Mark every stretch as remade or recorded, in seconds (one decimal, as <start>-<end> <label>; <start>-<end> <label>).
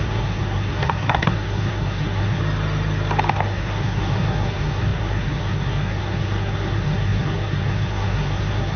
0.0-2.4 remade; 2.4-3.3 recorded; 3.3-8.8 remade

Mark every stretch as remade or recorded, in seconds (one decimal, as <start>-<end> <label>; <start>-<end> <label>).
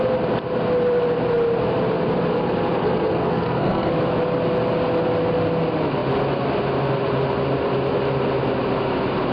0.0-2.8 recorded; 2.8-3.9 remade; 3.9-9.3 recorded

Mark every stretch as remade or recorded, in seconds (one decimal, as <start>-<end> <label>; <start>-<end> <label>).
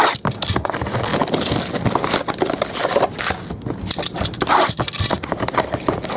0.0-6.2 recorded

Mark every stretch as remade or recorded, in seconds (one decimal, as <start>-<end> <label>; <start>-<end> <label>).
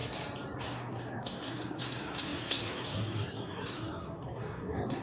0.0-0.6 recorded; 0.6-5.0 remade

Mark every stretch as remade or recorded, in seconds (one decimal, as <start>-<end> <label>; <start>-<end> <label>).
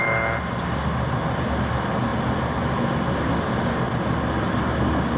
0.0-5.2 recorded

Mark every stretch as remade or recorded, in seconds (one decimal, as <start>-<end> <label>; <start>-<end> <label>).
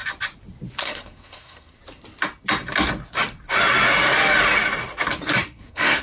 0.0-0.8 recorded; 0.8-1.8 remade; 1.8-5.4 recorded; 5.4-6.0 remade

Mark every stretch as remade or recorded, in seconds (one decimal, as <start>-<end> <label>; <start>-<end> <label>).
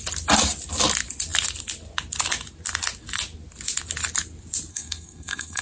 0.0-4.7 recorded; 4.7-5.6 remade